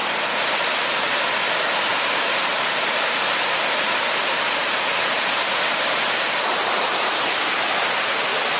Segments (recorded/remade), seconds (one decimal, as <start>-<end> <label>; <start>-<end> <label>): 0.0-8.6 remade